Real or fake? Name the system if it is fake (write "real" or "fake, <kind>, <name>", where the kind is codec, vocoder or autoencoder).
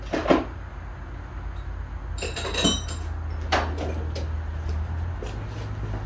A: real